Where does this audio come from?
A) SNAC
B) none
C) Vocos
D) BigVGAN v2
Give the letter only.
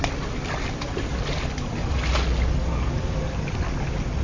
B